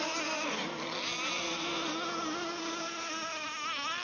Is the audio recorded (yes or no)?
yes